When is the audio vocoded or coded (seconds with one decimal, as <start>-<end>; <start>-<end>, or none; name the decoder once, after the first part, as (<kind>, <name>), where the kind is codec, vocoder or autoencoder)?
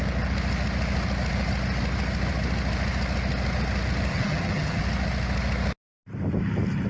4.1-4.8 (vocoder, HiFi-GAN)